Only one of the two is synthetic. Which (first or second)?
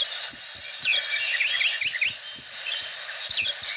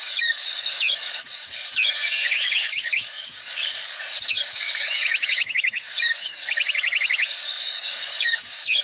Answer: second